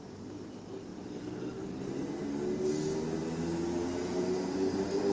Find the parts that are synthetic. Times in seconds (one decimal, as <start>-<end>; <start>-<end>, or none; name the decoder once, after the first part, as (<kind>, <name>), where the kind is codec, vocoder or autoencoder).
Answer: none